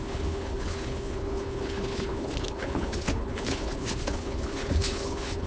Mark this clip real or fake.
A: fake